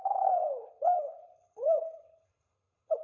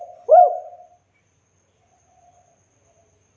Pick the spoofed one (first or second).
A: first